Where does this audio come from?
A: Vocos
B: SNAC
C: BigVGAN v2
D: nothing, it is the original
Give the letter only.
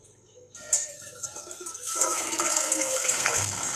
B